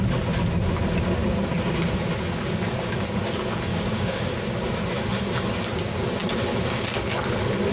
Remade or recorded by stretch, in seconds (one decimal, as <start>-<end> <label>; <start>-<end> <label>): 0.0-3.7 recorded; 3.7-4.3 remade; 4.3-7.7 recorded

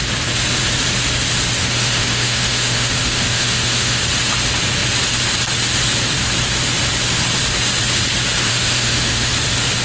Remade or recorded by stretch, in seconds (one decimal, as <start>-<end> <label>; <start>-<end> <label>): 0.0-1.6 recorded; 1.6-4.0 remade; 4.0-8.5 recorded; 8.5-9.3 remade; 9.3-9.8 recorded

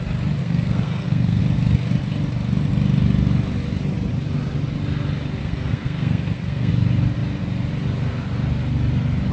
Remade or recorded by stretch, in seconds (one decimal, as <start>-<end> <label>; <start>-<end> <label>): 0.0-0.4 recorded; 0.4-1.4 remade; 1.4-5.4 recorded; 5.4-6.7 remade; 6.7-9.3 recorded

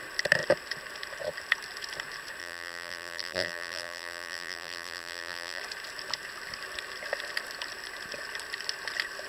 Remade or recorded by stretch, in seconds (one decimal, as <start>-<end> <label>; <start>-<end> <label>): 0.0-2.4 recorded; 2.4-5.6 remade; 5.6-9.3 recorded

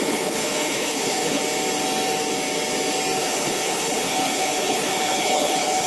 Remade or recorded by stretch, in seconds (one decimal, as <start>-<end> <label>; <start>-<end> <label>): 0.0-1.4 remade; 1.4-3.2 recorded; 3.2-5.9 remade

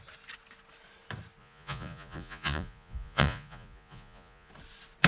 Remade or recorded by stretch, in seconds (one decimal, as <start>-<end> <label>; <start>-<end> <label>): 0.0-1.4 recorded; 1.4-4.5 remade; 4.5-5.1 recorded

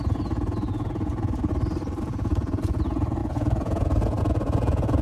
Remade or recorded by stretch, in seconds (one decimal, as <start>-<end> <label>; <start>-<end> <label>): 0.0-1.5 remade; 1.5-2.0 recorded; 2.0-5.0 remade

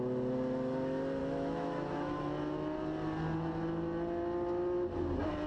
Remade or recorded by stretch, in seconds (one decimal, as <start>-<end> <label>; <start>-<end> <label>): 0.0-1.2 recorded; 1.2-2.2 remade; 2.2-5.5 recorded